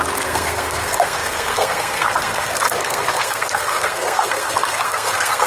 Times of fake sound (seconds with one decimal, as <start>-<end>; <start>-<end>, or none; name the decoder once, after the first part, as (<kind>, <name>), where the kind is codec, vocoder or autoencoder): 0.0-5.5 (codec, SNAC)